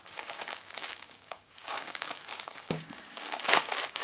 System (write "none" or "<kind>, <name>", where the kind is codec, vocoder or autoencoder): codec, DAC